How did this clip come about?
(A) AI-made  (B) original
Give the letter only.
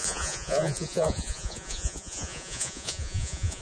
A